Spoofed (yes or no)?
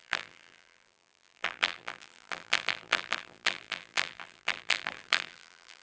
yes